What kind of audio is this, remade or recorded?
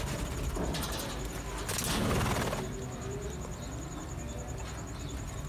recorded